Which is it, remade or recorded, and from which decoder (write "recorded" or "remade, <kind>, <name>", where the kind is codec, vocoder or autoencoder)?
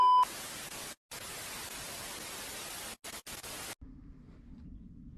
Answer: recorded